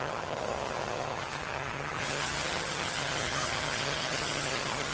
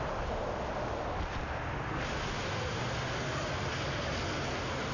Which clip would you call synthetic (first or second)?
first